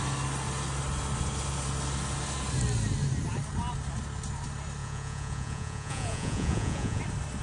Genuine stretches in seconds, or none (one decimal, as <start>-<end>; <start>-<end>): 0.0-4.8; 7.0-7.4